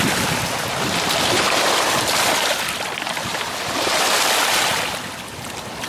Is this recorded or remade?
recorded